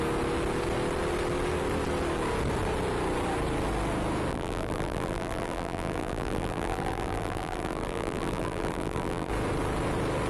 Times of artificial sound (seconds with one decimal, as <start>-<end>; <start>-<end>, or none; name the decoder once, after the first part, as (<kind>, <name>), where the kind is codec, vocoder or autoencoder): 4.3-9.3 (vocoder, BigVGAN v2)